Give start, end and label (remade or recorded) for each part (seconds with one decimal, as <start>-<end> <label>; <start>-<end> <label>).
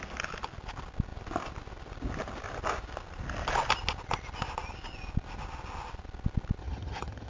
0.0-6.6 recorded; 6.6-7.3 remade